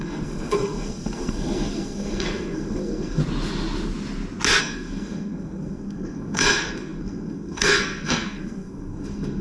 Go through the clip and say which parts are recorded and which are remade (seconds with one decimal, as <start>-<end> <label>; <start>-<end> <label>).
0.0-3.2 remade; 3.2-4.6 recorded; 4.6-9.4 remade